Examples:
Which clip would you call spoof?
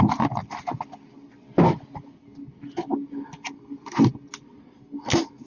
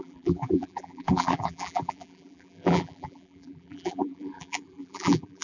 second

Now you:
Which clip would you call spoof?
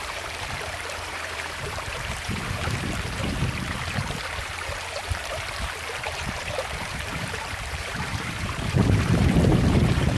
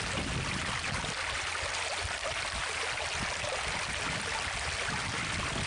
first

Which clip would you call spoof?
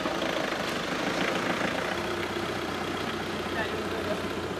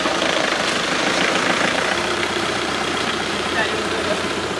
second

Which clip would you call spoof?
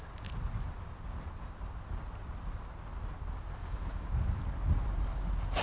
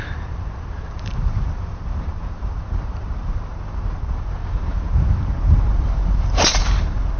second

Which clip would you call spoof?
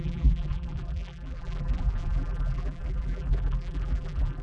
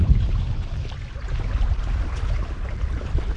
first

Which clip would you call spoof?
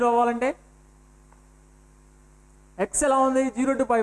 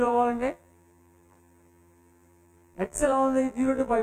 second